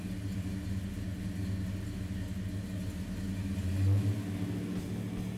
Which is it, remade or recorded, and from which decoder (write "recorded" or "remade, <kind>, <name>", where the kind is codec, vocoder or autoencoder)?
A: recorded